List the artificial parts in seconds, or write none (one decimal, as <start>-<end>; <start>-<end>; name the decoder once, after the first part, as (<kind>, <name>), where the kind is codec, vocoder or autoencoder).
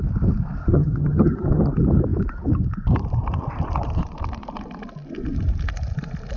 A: 0.6-1.7 (vocoder, HiFi-GAN)